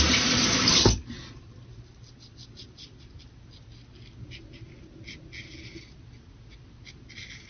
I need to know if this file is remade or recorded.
recorded